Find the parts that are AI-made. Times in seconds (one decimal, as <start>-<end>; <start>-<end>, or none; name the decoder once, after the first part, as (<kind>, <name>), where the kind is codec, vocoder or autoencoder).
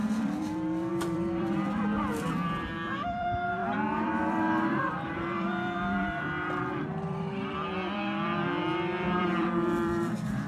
0.0-10.5 (vocoder, BigVGAN v2)